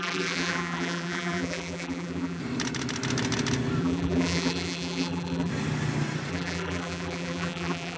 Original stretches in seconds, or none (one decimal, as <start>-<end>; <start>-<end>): 2.4-3.8; 5.5-6.3